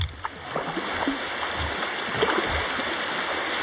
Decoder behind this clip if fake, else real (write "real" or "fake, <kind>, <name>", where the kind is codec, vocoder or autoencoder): real